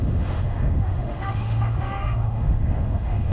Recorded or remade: remade